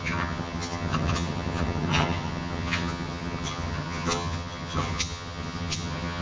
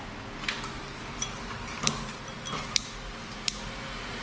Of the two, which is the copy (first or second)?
first